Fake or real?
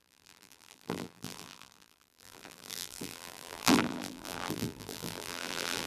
fake